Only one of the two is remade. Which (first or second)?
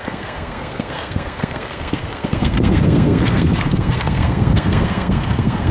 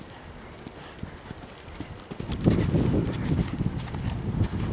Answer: first